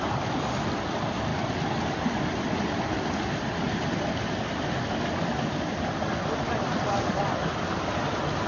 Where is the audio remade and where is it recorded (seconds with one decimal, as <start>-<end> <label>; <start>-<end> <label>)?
0.0-8.5 recorded